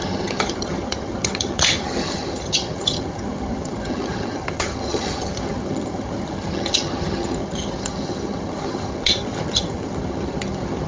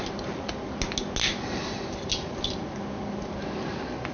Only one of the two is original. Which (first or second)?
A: second